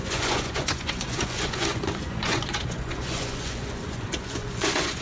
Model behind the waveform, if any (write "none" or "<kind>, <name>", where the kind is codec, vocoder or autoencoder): vocoder, Vocos